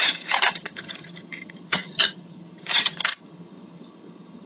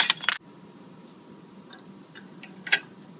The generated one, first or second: first